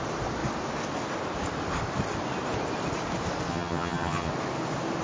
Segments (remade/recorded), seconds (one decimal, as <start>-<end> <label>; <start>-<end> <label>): 0.0-3.5 recorded; 3.5-4.3 remade; 4.3-5.0 recorded